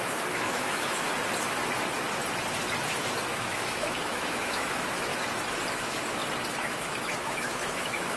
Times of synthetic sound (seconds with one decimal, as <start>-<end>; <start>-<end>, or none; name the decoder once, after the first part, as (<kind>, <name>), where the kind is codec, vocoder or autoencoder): 0.0-1.1 (autoencoder, DAC-VAE); 3.3-5.1; 5.8-6.2; 6.7-8.2